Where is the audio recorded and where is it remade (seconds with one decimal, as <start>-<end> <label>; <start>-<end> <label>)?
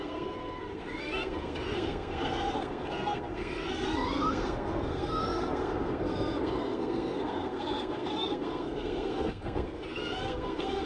0.0-10.9 remade